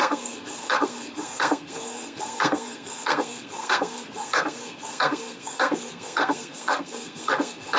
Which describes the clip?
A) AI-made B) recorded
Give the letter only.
A